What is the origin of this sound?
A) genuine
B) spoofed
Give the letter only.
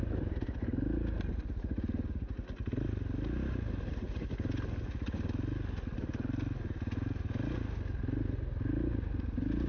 A